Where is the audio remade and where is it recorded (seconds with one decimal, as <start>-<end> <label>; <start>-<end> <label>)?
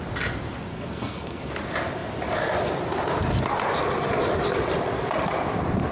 0.0-0.7 recorded; 0.7-1.4 remade; 1.4-5.9 recorded